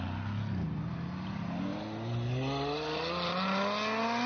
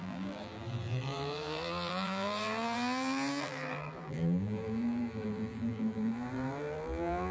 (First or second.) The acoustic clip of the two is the first